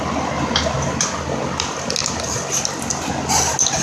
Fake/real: real